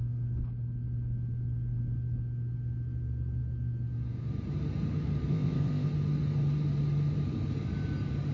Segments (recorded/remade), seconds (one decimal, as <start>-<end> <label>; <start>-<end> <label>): 0.0-5.3 recorded; 5.3-5.9 remade; 5.9-8.3 recorded